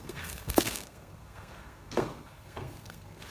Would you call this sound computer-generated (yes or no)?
yes